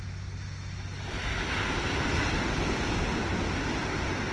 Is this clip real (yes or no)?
yes